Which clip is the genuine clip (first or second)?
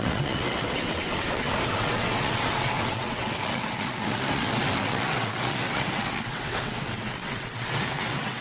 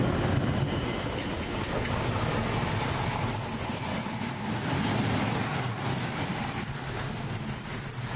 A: second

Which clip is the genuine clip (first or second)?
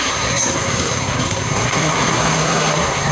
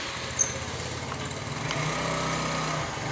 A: second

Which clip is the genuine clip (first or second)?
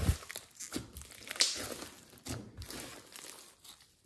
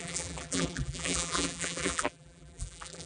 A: first